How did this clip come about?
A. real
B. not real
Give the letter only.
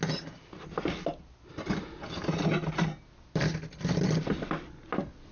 A